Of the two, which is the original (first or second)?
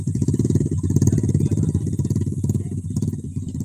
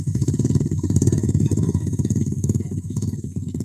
first